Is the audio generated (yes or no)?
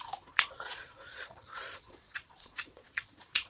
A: yes